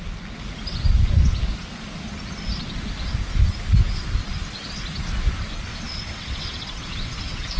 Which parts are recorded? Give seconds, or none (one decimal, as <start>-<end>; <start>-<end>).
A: 0.0-5.7